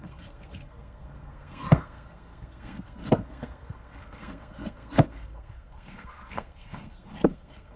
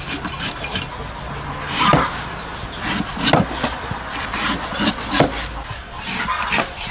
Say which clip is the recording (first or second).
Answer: second